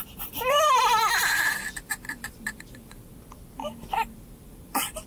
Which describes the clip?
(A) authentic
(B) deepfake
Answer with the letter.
B